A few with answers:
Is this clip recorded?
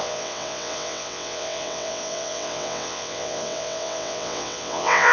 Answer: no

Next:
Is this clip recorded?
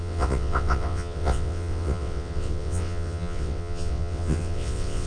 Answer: no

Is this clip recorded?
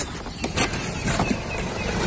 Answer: yes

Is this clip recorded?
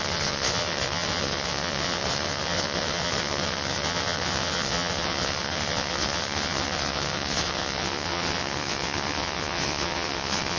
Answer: no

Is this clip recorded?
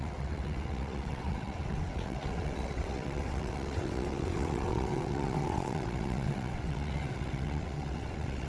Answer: no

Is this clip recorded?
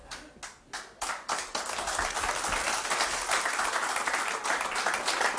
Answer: yes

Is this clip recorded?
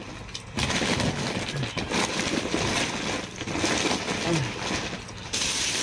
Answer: yes